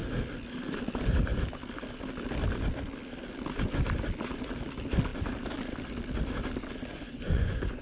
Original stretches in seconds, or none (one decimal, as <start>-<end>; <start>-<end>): 0.0-6.9